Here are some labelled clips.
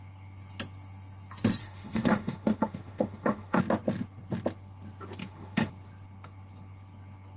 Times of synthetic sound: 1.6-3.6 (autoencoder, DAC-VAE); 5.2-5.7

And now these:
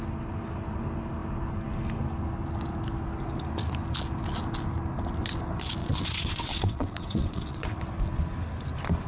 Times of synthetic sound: 5.8-7.8 (vocoder, WaveNeXt)

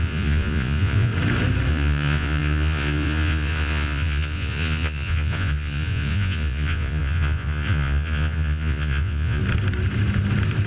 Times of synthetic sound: 0.0-1.1 (vocoder, Vocos); 1.7-9.4